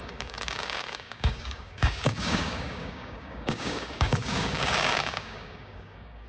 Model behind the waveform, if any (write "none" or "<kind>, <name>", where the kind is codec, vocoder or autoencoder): codec, DAC